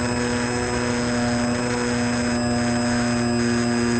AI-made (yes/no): no